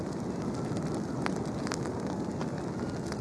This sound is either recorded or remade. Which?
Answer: recorded